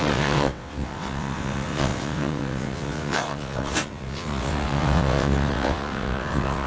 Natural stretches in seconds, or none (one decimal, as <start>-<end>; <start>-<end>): none